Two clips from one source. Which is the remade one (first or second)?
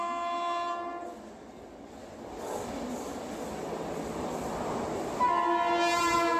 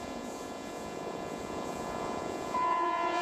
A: second